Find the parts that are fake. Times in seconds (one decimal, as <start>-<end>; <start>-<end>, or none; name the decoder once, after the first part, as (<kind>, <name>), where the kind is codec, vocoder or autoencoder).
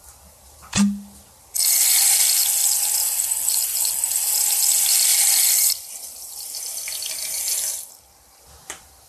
none